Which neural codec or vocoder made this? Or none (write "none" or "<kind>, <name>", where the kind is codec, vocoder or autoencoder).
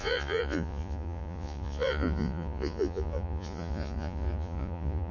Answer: vocoder, Vocos